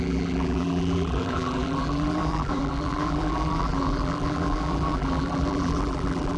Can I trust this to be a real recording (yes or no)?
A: no